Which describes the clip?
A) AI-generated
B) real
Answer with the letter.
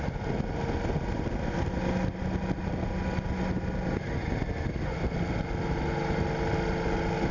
B